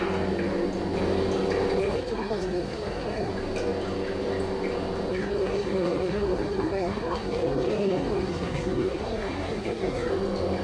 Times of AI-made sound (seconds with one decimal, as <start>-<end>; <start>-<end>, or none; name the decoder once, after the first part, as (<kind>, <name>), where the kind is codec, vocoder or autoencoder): 1.8-3.3 (codec, SNAC); 5.1-10.1